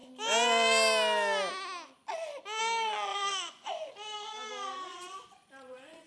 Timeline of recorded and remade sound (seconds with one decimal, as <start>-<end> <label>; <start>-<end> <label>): 0.0-3.1 recorded; 3.1-3.9 remade; 3.9-4.9 recorded; 4.9-6.1 remade